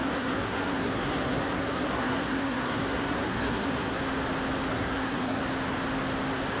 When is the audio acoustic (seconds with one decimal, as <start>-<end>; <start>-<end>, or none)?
4.0-4.7; 5.4-6.6